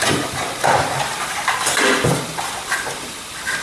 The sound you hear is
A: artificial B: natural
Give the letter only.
A